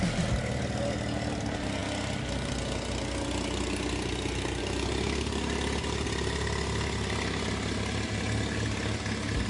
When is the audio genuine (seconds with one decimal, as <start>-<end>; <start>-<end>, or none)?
0.0-9.5